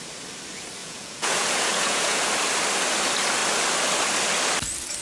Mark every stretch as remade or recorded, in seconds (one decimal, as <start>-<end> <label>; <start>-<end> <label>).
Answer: 0.0-0.8 recorded; 0.8-2.3 remade; 2.3-5.0 recorded